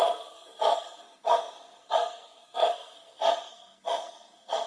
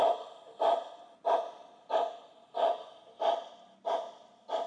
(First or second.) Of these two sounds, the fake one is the first